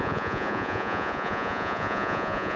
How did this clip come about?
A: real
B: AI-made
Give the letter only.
B